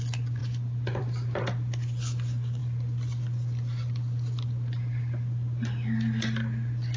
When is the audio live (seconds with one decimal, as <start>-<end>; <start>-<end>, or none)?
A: 0.0-7.0